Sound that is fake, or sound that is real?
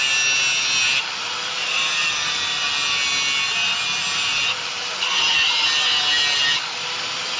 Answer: real